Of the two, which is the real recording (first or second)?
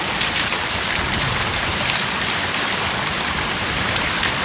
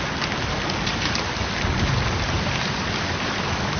second